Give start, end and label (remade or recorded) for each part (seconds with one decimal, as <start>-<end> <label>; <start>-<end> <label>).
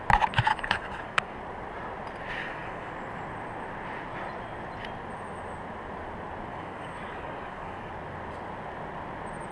0.0-0.5 recorded; 0.5-1.4 remade; 1.4-2.4 recorded; 2.4-2.9 remade; 2.9-6.5 recorded; 6.5-7.9 remade; 7.9-9.5 recorded